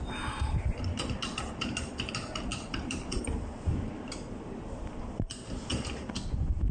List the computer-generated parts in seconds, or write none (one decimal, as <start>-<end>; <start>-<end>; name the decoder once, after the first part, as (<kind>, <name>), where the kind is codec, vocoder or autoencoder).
2.5-3.2 (vocoder, BigVGAN v2)